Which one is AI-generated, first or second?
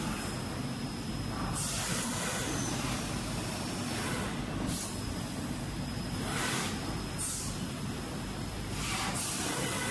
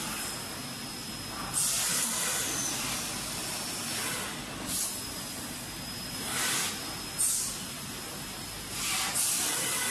first